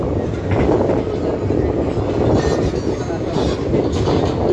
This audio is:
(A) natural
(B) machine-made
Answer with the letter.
A